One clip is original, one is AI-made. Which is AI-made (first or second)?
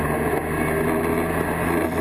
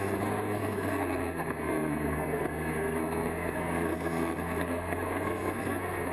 second